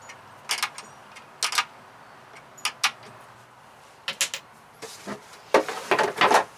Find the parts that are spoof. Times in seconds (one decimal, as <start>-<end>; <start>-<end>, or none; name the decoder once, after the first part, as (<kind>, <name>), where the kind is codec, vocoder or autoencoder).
none